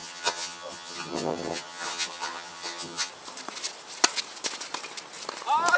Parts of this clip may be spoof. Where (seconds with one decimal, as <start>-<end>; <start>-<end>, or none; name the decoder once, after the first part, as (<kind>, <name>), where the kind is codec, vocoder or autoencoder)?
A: 0.0-3.1 (vocoder, HiFi-GAN)